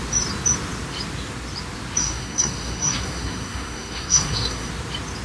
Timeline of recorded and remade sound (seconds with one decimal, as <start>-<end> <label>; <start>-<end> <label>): 0.0-2.0 recorded; 2.0-4.7 remade; 4.7-5.2 recorded

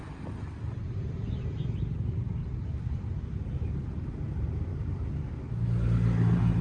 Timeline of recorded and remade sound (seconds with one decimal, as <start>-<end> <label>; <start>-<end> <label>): 0.0-6.6 recorded